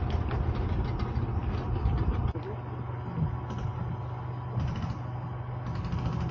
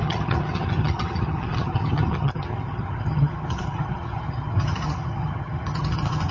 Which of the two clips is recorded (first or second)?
first